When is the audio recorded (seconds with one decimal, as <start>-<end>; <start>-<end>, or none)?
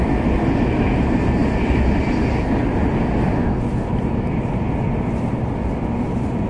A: 0.0-6.5